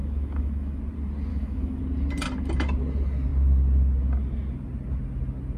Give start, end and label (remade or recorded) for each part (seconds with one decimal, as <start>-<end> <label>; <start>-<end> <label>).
0.0-0.8 remade; 0.8-1.3 recorded; 1.3-1.8 remade; 1.8-5.6 recorded